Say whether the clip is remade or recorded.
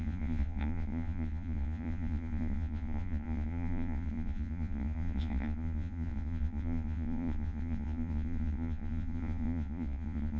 remade